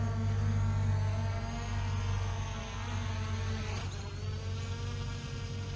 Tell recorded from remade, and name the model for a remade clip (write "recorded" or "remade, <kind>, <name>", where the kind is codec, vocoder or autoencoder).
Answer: recorded